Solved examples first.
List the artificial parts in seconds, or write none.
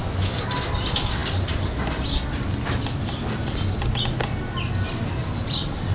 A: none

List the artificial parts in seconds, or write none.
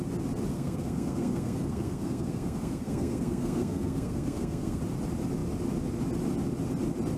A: 0.5-4.8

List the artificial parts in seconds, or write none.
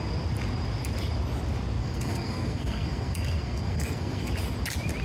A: 1.8-4.3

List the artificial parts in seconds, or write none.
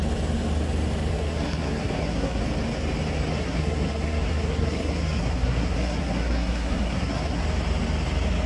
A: 1.1-2.4; 3.3-7.4